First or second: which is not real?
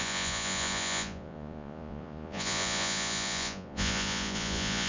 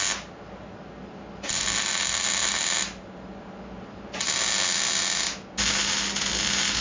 first